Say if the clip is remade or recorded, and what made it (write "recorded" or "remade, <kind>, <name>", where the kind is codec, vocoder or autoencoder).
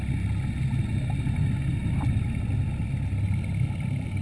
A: recorded